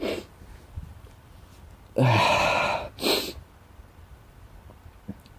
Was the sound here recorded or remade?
recorded